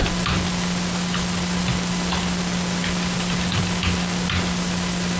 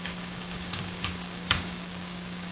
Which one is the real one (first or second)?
first